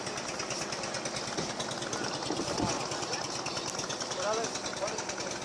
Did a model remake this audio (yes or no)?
no